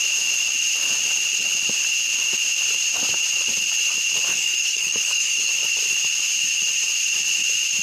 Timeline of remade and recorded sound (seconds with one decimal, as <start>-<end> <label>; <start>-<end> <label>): 0.0-4.3 recorded; 4.3-5.5 remade; 5.5-7.8 recorded